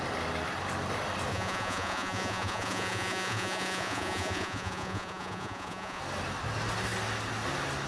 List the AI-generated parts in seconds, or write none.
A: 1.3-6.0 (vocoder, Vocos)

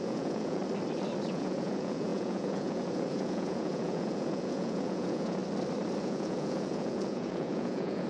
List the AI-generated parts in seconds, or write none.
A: 0.0-0.6 (vocoder, Vocos); 1.3-5.4; 6.0-8.1